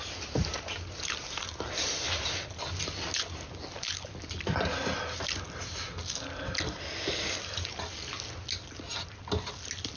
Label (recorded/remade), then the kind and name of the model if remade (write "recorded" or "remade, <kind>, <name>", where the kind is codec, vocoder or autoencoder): recorded